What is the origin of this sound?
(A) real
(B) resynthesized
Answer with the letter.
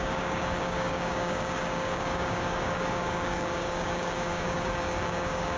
B